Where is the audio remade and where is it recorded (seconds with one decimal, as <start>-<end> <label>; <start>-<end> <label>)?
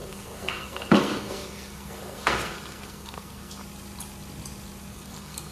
0.0-3.6 remade; 3.6-4.9 recorded; 4.9-5.5 remade